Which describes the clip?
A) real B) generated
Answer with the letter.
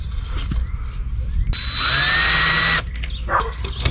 A